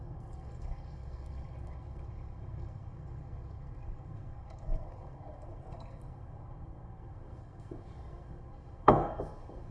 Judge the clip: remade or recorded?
remade